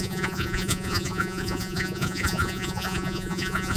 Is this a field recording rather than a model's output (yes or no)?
no